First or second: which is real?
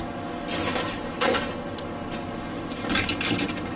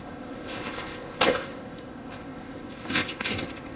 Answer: first